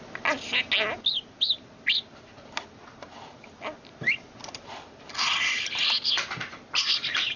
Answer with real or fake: real